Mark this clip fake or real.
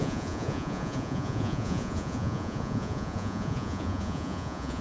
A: fake